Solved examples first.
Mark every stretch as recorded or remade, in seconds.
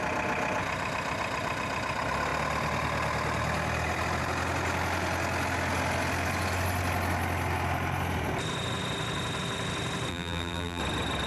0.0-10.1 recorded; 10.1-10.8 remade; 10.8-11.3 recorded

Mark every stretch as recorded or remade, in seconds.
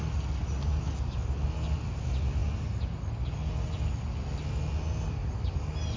0.0-6.0 recorded